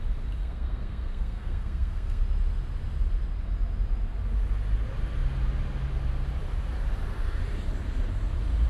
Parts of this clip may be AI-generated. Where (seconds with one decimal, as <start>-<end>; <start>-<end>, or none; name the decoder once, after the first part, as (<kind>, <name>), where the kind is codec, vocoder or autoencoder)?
0.4-2.2 (codec, SNAC)